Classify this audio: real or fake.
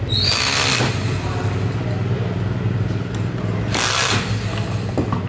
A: real